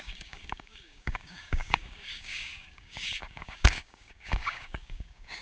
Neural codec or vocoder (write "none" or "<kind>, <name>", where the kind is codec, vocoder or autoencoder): codec, DAC